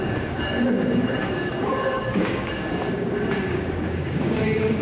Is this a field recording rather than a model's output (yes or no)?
no